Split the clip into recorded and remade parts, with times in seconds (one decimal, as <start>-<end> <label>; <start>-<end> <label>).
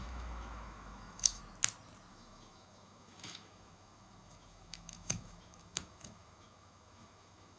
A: 0.0-1.4 remade; 1.4-2.1 recorded; 2.1-7.6 remade